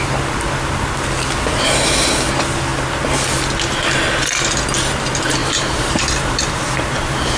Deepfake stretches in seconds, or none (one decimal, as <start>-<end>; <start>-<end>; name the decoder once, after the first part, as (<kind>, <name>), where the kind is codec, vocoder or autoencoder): 5.4-7.4 (vocoder, BigVGAN v2)